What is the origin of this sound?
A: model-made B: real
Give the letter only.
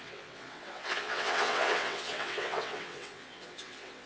A